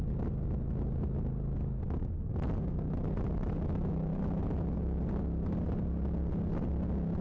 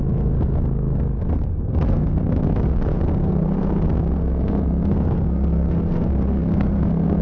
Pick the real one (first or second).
first